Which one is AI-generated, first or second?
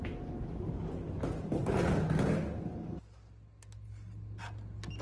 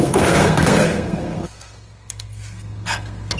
second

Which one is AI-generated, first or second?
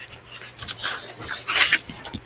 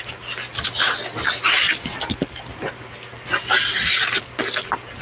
first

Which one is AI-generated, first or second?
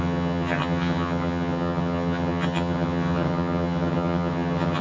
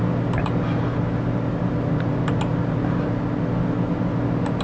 first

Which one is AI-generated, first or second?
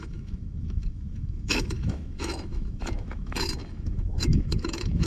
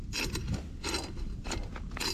first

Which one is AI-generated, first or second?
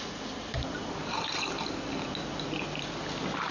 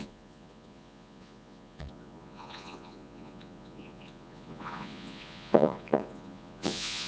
second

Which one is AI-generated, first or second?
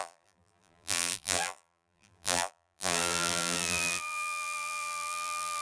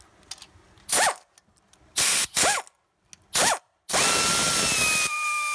first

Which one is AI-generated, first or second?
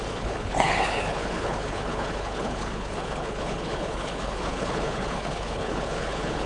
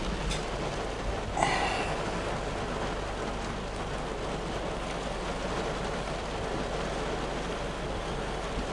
first